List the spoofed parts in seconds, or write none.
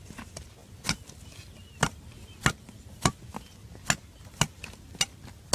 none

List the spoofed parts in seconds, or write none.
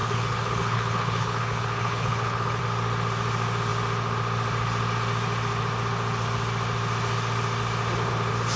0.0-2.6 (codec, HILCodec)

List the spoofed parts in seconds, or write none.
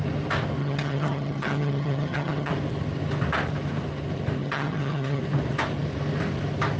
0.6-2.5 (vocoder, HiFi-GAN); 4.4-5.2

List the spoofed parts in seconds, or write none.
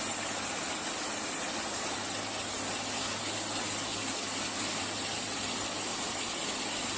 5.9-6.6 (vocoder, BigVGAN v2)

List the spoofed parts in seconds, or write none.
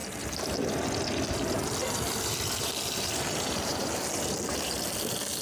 1.2-5.4 (vocoder, BigVGAN v2)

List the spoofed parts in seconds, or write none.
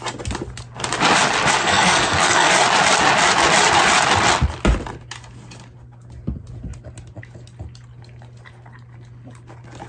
1.6-2.5 (codec, SNAC)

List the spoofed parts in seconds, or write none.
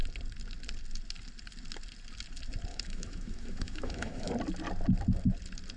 2.7-4.3 (autoencoder, DAC-VAE)